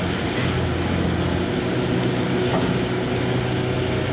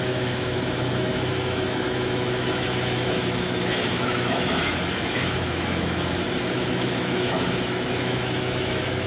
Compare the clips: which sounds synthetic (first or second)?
second